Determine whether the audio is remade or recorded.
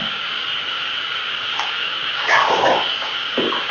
remade